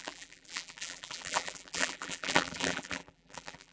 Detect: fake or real fake